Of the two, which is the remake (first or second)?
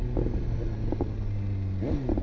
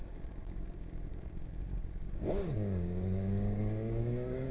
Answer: second